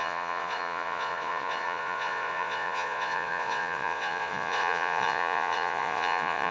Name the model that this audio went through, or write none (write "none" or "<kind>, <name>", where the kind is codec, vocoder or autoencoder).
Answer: vocoder, Vocos